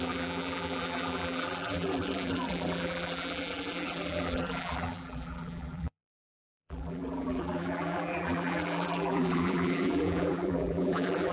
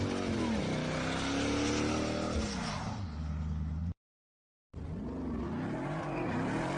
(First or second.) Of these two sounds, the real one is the second